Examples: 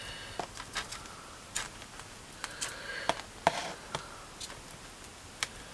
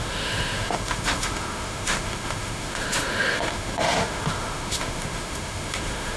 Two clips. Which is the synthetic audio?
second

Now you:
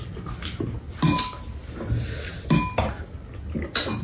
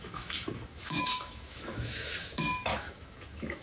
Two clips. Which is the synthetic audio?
second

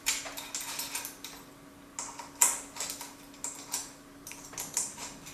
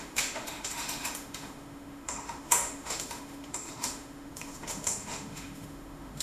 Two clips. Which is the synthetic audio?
second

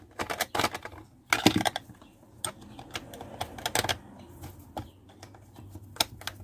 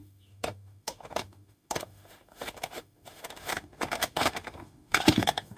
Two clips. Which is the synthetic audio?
second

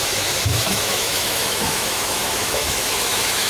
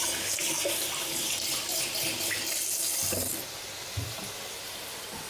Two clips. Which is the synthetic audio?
first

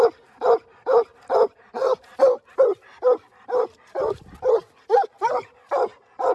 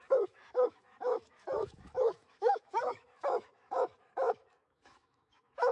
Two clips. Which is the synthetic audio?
second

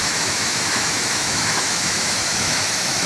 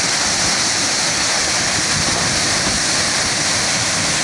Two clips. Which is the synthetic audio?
first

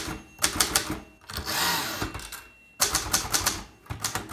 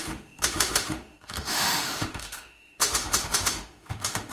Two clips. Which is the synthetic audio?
second